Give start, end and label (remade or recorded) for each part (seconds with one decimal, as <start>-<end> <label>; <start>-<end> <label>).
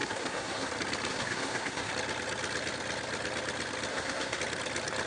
0.0-0.7 remade; 0.7-1.1 recorded; 1.1-1.9 remade; 1.9-3.9 recorded; 3.9-4.4 remade; 4.4-5.1 recorded